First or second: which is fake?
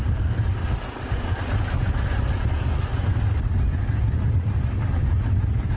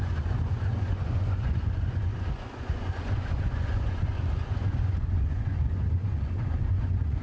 second